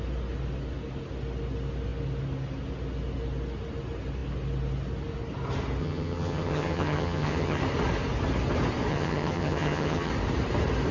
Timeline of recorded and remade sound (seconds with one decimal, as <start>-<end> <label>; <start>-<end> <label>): 0.0-5.8 recorded; 5.8-7.6 remade; 7.6-8.9 recorded; 8.9-10.1 remade; 10.1-10.9 recorded